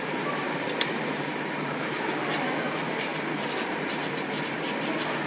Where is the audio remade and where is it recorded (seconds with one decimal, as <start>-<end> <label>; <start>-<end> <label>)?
0.0-3.1 remade; 3.1-4.4 recorded; 4.4-5.3 remade